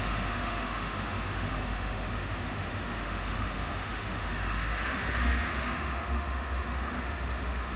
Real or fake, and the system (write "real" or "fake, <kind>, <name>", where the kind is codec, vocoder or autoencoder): fake, autoencoder, DAC-VAE